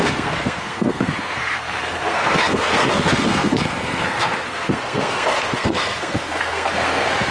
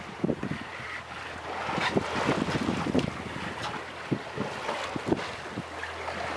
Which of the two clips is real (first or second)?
second